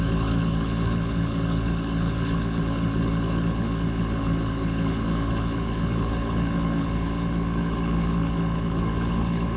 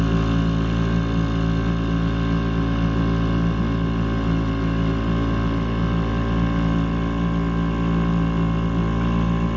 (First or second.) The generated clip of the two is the first